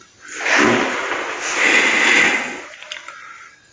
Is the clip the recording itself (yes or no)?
yes